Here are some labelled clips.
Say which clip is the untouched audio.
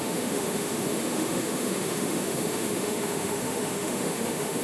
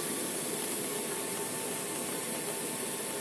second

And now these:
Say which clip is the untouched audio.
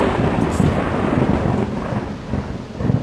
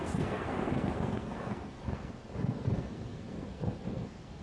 first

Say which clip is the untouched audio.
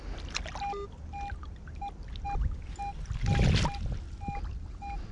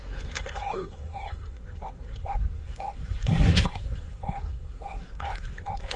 first